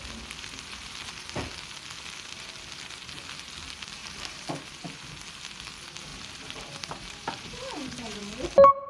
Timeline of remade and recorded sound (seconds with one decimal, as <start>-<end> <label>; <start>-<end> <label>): 0.0-4.0 recorded; 4.0-4.5 remade; 4.5-6.1 recorded; 6.1-8.2 remade; 8.2-8.9 recorded